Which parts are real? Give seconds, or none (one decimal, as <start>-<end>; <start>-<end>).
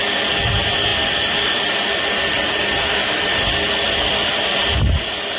0.0-5.4